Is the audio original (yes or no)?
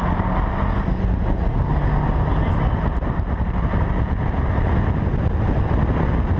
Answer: yes